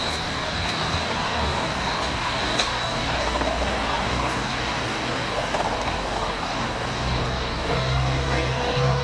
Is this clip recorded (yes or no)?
no